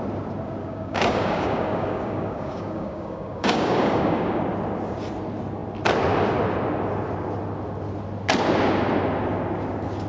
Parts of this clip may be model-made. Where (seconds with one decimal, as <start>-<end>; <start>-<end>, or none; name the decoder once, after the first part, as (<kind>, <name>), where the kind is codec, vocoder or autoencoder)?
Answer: 0.6-4.4 (codec, DAC)